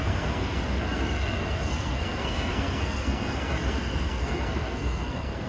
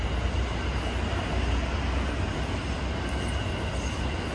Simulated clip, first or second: first